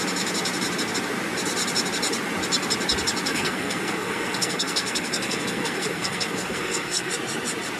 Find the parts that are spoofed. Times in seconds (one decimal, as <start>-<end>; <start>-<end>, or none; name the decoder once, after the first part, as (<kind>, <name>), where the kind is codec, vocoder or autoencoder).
3.3-7.1 (codec, SNAC)